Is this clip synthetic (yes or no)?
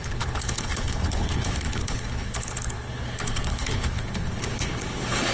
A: yes